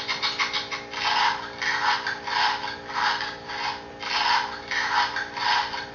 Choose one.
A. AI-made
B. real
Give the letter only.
B